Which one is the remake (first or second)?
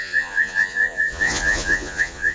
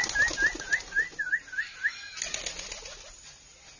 first